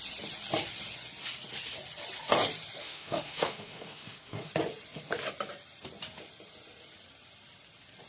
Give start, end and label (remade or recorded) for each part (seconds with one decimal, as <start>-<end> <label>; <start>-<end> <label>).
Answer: 0.0-2.8 recorded; 2.8-4.5 remade; 4.5-8.1 recorded